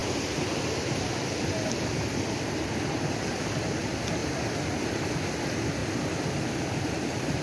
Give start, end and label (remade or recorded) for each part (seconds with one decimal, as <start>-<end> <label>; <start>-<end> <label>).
0.0-7.4 recorded